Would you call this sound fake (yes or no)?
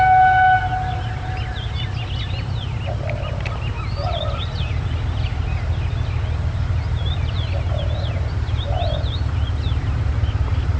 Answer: no